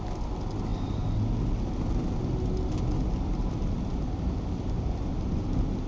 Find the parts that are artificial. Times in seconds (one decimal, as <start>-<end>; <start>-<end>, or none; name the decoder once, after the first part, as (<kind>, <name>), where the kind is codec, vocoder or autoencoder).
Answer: none